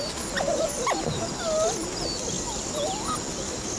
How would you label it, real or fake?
real